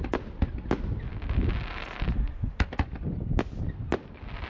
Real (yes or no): yes